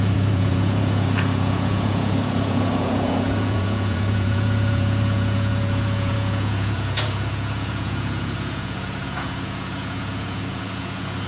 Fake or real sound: fake